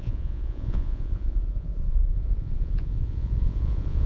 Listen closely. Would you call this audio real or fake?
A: fake